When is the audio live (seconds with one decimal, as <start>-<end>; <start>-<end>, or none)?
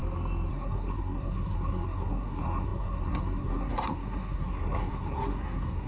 0.0-0.5